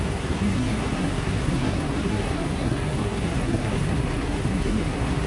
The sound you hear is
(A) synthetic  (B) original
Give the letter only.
A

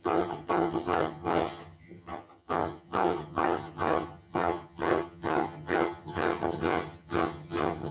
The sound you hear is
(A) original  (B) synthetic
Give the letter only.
B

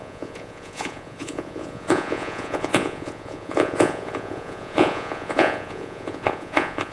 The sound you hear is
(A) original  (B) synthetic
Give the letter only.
B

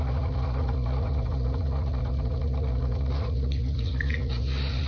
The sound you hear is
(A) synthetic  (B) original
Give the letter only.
A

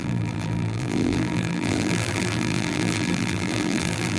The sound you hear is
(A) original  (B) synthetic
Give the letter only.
B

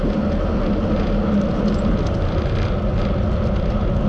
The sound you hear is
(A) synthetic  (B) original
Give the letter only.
B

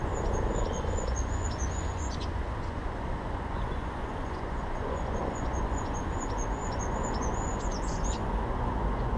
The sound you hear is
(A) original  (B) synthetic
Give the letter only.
B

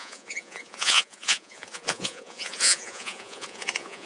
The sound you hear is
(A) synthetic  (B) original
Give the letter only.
A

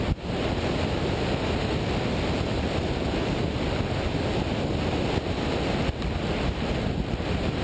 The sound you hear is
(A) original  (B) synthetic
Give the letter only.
A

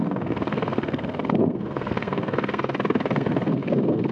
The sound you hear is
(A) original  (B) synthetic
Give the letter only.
B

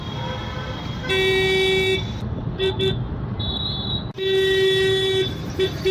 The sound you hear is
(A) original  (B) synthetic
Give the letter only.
A